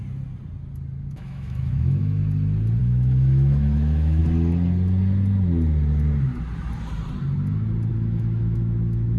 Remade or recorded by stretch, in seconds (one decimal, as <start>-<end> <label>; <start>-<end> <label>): 0.0-1.1 recorded; 1.1-2.2 remade; 2.2-2.8 recorded; 2.8-4.2 remade; 4.2-7.9 recorded; 7.9-9.2 remade